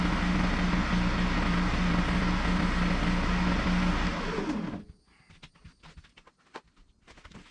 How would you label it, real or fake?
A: real